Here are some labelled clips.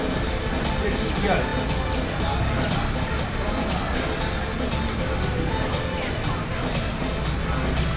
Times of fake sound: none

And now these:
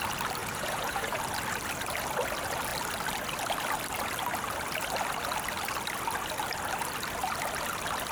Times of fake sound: 0.4-1.2 (vocoder, Vocos)